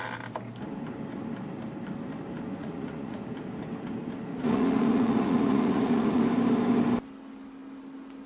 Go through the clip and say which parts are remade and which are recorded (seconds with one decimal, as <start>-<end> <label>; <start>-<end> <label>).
0.0-2.6 recorded; 2.6-3.2 remade; 3.2-4.3 recorded; 4.3-6.2 remade; 6.2-8.3 recorded